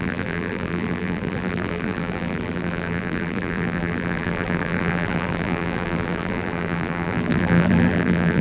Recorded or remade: remade